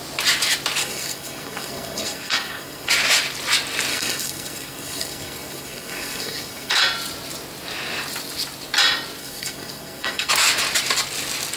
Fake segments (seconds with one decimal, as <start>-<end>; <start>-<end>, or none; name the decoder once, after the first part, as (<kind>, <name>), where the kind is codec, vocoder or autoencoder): 0.8-2.9 (codec, SNAC); 3.9-6.8; 9.2-10.3